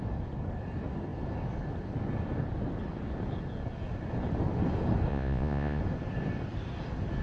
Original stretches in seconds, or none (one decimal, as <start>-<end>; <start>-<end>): 0.0-5.1; 5.8-7.2